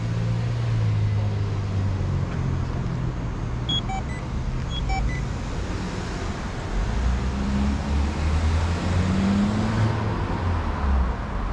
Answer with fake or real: real